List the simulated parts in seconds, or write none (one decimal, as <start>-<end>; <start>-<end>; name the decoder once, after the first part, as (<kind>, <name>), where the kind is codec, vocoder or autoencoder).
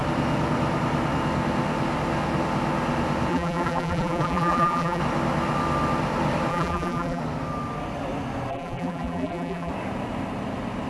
3.3-5.0 (vocoder, BigVGAN v2); 6.5-7.2; 8.5-9.7